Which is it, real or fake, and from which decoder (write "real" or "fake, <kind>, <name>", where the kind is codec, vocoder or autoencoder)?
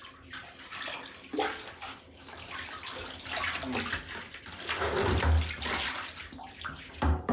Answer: real